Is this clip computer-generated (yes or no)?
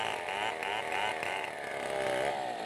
no